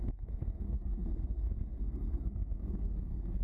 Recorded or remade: remade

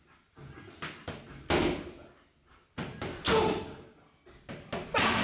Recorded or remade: recorded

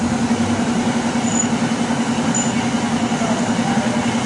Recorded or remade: recorded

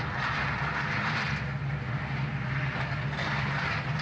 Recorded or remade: recorded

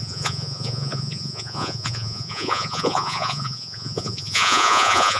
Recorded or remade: remade